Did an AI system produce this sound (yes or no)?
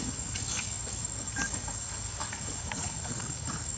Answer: yes